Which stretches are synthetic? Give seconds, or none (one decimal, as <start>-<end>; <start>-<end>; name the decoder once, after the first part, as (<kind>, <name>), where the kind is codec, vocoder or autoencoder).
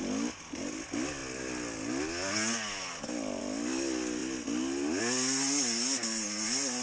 none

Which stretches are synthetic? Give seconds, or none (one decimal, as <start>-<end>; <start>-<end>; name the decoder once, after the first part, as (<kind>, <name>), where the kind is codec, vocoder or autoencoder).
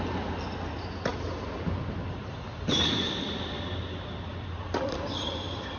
1.1-3.8 (vocoder, BigVGAN v2); 4.3-5.8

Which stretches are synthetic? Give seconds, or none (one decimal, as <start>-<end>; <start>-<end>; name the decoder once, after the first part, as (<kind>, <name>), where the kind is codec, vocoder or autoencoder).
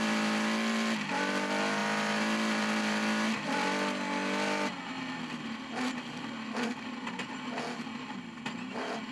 none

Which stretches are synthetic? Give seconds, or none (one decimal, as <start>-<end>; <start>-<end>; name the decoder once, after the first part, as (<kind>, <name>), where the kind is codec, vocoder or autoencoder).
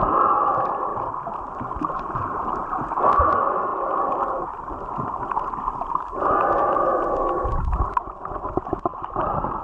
none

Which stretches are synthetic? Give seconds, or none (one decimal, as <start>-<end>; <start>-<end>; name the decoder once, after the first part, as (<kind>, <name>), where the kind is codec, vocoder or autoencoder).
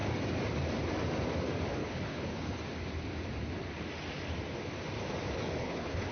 1.7-2.6 (codec, HILCodec); 5.6-6.1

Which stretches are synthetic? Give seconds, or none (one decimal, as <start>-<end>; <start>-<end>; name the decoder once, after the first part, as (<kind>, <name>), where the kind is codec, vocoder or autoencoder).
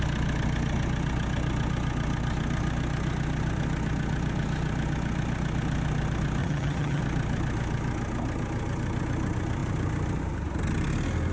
6.4-7.0 (vocoder, HiFi-GAN)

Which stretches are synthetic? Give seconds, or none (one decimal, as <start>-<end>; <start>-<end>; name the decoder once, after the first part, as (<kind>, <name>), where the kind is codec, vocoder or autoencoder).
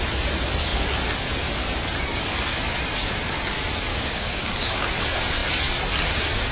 3.9-4.9 (codec, DAC)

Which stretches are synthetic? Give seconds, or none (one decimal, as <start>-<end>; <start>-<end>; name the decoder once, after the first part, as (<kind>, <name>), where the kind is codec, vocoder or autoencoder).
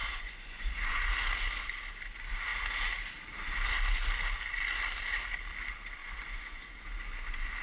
0.0-1.0 (vocoder, Vocos); 6.0-6.9